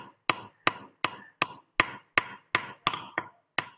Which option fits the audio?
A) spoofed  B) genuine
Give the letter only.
B